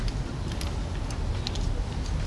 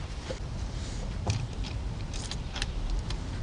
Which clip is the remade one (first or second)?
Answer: second